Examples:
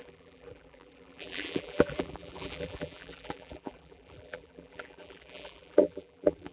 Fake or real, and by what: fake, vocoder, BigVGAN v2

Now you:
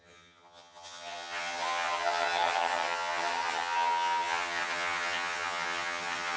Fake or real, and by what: fake, vocoder, HiFi-GAN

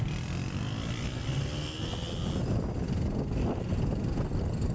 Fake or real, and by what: real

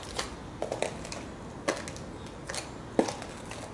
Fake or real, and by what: real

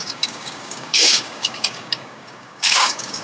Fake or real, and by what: fake, codec, DAC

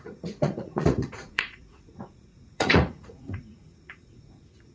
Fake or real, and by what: fake, vocoder, Vocos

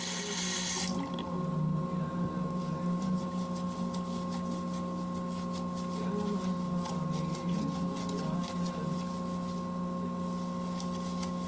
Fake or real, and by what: real